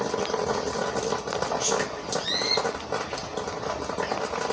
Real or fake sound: real